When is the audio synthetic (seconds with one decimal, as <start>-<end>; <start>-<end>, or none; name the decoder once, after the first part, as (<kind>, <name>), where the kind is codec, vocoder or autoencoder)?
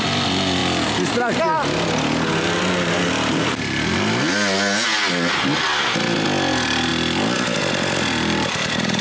none